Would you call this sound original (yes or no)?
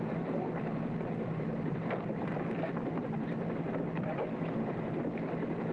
yes